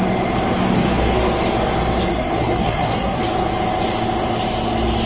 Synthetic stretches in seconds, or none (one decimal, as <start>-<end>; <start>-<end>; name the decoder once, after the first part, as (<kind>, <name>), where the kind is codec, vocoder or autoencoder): 2.1-3.2 (codec, SNAC)